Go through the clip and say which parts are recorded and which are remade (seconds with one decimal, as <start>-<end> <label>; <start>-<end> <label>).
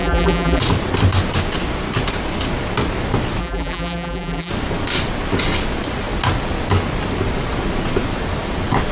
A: 0.0-0.6 remade; 0.6-3.4 recorded; 3.4-4.5 remade; 4.5-8.9 recorded